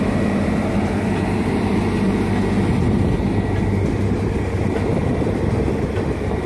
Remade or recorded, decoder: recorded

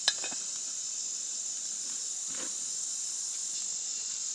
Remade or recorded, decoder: recorded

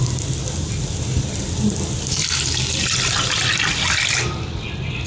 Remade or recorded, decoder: recorded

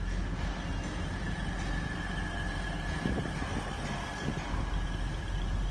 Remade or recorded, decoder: recorded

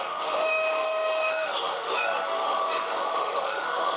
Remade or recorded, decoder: remade, autoencoder, DAC-VAE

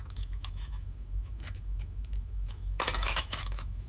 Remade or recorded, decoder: remade, autoencoder, DAC-VAE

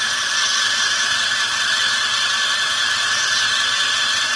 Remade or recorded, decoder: recorded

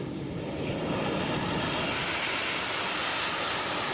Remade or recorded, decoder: recorded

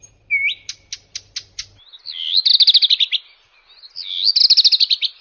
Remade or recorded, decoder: recorded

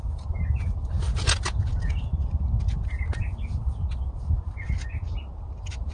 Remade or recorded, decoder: recorded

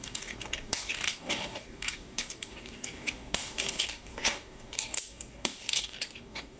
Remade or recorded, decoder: remade, codec, DAC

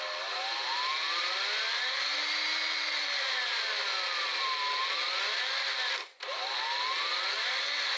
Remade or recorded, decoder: recorded